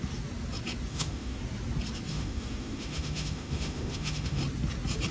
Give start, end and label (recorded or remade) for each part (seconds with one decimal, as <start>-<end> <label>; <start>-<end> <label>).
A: 0.0-0.9 recorded; 0.9-1.4 remade; 1.4-2.1 recorded; 2.1-4.4 remade; 4.4-5.1 recorded